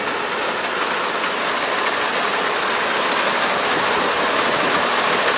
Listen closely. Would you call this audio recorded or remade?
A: recorded